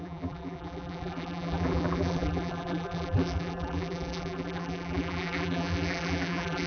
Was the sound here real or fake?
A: fake